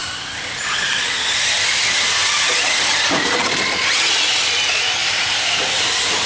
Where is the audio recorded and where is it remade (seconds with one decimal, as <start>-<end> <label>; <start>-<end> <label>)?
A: 0.0-1.7 remade; 1.7-2.2 recorded; 2.2-4.3 remade; 4.3-5.0 recorded; 5.0-6.3 remade